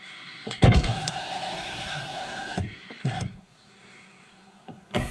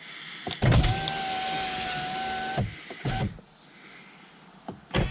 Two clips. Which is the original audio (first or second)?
second